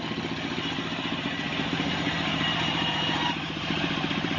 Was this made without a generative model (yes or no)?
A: no